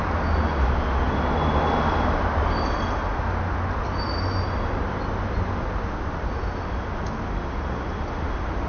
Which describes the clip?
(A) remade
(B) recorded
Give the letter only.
B